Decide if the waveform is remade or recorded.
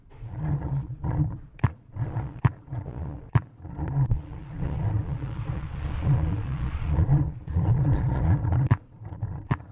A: remade